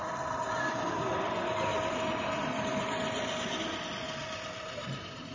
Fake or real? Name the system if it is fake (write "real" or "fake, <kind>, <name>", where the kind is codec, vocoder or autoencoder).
real